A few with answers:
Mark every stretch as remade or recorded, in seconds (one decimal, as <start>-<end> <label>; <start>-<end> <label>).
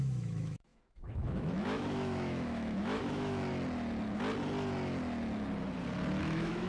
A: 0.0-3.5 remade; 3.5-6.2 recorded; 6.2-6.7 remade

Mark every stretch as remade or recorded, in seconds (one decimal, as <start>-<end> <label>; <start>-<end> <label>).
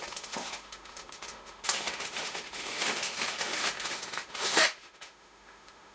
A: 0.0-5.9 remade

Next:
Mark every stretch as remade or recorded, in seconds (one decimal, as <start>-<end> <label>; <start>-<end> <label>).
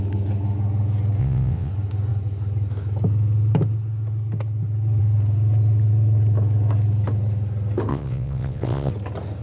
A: 0.0-1.2 recorded; 1.2-1.7 remade; 1.7-7.9 recorded; 7.9-8.9 remade; 8.9-9.4 recorded